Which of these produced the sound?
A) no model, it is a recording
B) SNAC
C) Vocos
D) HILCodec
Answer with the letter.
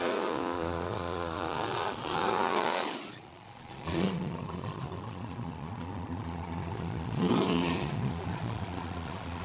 C